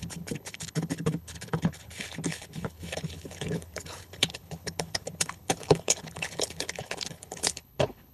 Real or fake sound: fake